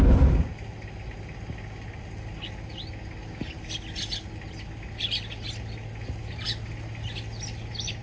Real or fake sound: real